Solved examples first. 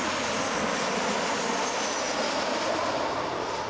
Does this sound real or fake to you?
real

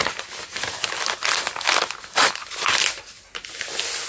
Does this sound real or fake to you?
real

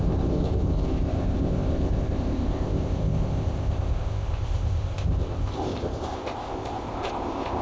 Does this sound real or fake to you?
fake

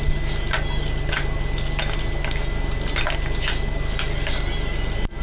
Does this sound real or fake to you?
real